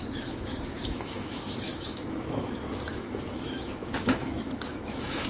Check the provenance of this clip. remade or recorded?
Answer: remade